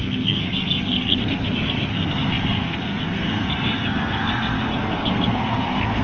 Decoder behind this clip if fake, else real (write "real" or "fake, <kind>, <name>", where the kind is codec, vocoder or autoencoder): fake, codec, SNAC